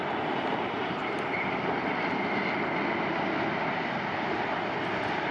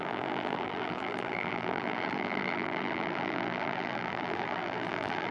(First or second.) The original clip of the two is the first